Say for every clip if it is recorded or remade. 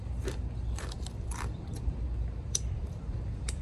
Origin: remade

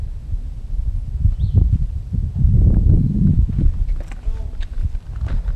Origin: recorded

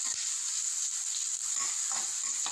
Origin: recorded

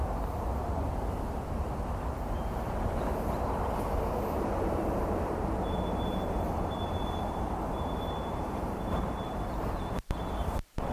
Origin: remade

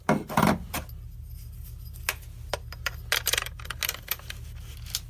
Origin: recorded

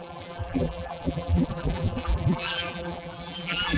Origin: remade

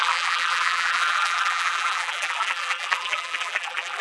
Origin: remade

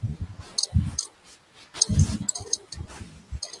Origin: recorded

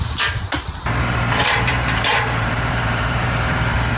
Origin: remade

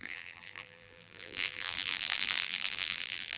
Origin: remade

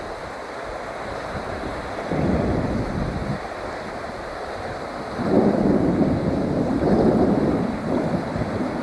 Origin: remade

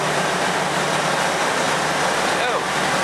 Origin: recorded